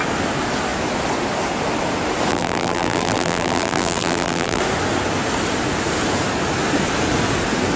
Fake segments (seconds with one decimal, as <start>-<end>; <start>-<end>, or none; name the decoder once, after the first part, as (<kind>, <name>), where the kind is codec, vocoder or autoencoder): 2.3-4.6 (vocoder, BigVGAN v2)